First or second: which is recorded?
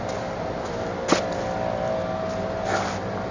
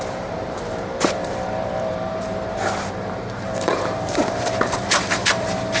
first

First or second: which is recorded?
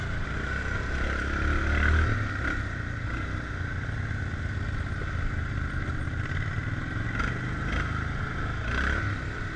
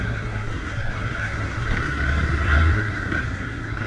first